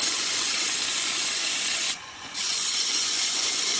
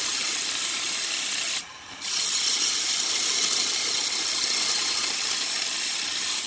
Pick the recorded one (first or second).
second